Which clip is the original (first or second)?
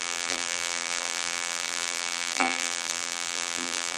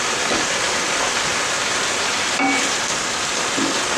second